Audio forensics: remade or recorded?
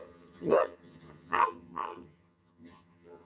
remade